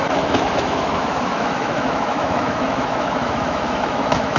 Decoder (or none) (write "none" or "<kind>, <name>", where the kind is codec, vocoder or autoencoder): autoencoder, DAC-VAE